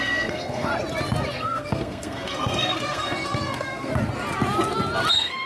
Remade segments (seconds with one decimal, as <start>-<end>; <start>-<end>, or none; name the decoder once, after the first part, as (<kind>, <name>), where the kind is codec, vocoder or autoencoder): 0.0-0.7 (codec, SNAC); 1.3-3.9; 5.1-5.5